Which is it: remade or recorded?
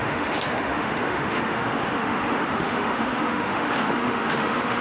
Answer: remade